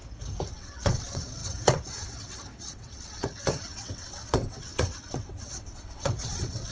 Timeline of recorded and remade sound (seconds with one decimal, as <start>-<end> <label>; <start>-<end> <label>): 0.0-0.5 recorded; 0.5-6.7 remade